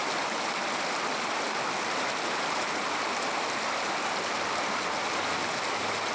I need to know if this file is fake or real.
real